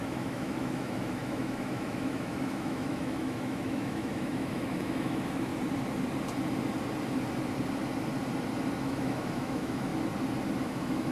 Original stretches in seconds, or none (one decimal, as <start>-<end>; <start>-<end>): 5.5-8.8; 9.9-10.6